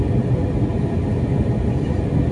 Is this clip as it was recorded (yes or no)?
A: yes